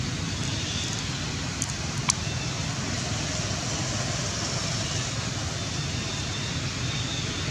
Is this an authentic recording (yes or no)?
yes